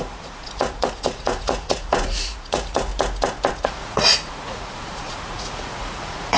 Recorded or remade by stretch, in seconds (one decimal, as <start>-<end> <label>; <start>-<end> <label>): 0.0-2.9 remade; 2.9-3.5 recorded; 3.5-6.4 remade